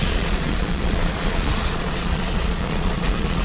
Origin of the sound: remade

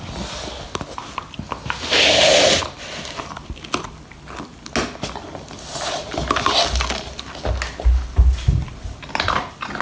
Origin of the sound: recorded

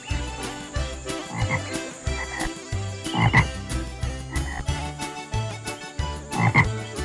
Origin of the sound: recorded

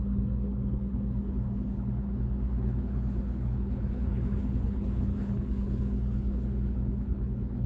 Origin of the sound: remade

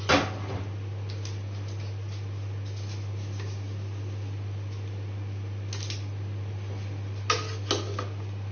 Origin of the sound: recorded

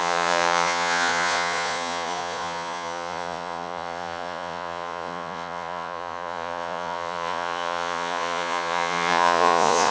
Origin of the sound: remade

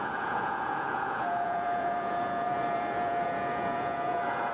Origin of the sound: remade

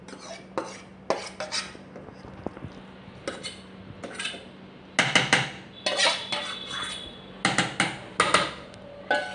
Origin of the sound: recorded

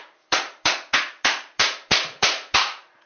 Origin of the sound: remade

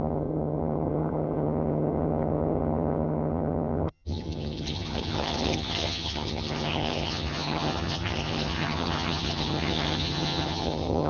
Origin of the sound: remade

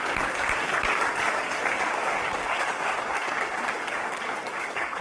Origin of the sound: remade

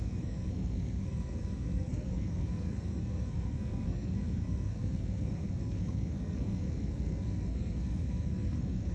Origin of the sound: remade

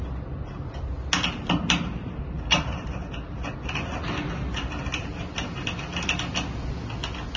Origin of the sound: recorded